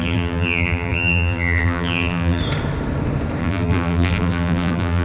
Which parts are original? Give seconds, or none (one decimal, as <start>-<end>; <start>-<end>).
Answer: 2.4-3.4